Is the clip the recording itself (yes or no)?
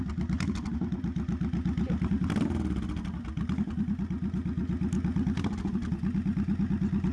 yes